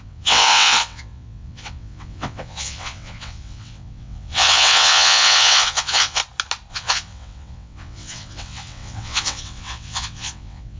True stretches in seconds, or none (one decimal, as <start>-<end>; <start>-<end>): 6.2-6.7